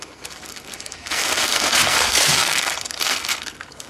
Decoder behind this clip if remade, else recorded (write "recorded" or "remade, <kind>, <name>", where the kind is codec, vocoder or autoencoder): remade, codec, SNAC